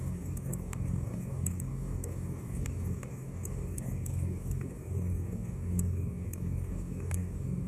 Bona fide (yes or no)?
no